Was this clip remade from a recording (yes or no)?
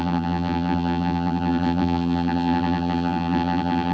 yes